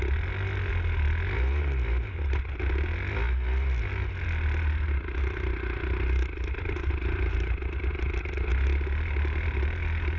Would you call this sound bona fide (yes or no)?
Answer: yes